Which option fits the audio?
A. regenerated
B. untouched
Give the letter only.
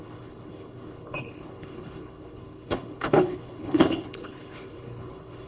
A